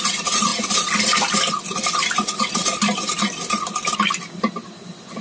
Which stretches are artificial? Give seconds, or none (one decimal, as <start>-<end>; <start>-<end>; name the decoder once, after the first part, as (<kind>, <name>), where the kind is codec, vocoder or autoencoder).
none